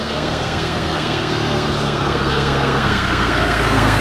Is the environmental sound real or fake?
fake